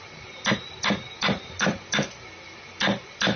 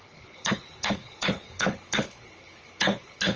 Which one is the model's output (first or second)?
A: second